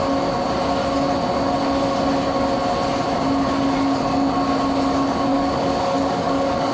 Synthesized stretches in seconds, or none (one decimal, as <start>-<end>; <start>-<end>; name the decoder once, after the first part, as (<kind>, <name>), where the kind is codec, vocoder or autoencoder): 5.3-6.7 (codec, DAC)